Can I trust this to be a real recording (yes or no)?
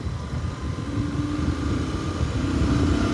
yes